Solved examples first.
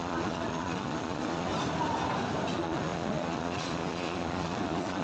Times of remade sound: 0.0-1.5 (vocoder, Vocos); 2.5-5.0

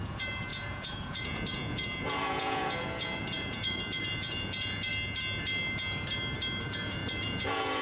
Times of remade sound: 0.0-4.9 (vocoder, Vocos); 6.6-7.8

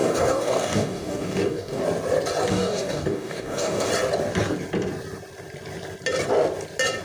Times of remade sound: 0.0-1.8 (codec, DAC); 2.5-3.9

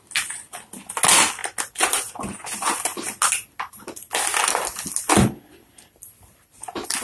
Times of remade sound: none

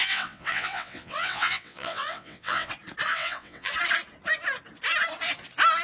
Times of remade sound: 0.0-2.7 (vocoder, WaveNeXt); 3.1-3.7

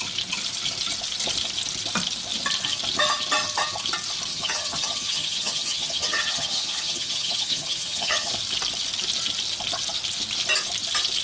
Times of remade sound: 4.3-8.3 (vocoder, HiFi-GAN)

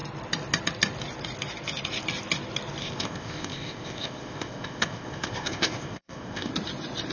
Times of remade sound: 2.8-6.5 (codec, ZipCodec)

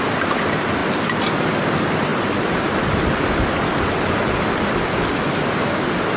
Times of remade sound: none